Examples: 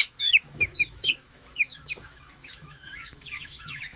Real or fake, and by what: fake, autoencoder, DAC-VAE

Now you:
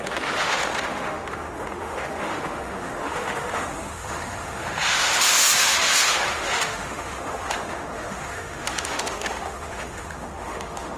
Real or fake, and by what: fake, autoencoder, DAC-VAE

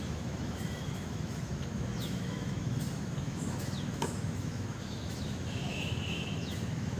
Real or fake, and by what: fake, autoencoder, DAC-VAE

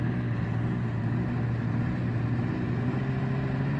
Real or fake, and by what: real